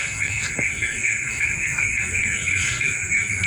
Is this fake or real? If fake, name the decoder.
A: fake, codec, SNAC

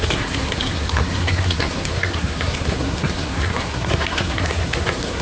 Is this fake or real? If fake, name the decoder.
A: fake, codec, SNAC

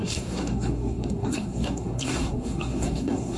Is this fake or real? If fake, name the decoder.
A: fake, codec, SNAC